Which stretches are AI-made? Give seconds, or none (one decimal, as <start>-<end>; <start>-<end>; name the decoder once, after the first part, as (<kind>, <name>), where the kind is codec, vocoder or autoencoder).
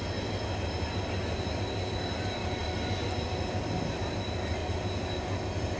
none